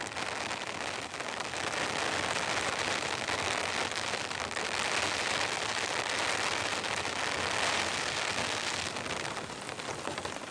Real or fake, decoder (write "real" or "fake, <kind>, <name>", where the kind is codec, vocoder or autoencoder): real